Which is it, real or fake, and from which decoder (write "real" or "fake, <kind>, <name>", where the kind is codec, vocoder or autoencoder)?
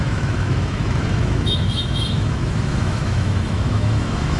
fake, autoencoder, DAC-VAE